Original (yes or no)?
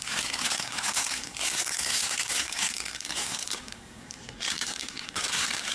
no